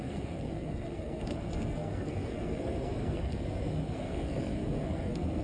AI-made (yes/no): yes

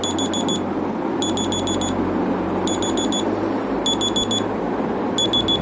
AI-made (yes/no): no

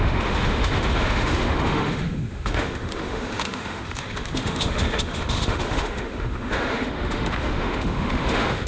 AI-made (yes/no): yes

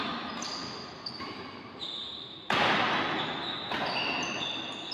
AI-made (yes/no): no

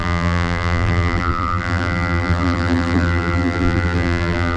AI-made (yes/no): yes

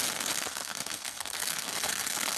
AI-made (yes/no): yes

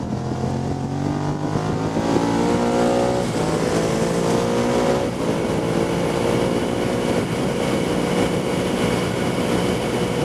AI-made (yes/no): no